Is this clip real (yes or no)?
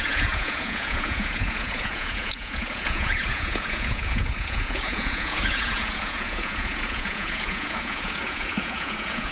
no